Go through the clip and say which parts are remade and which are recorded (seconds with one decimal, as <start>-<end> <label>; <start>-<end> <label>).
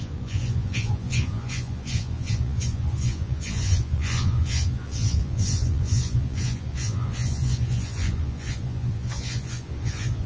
0.0-10.3 remade